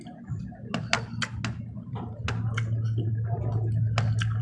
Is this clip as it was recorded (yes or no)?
yes